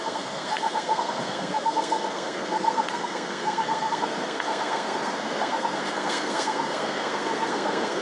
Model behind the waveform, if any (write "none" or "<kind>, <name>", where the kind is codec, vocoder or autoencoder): codec, SNAC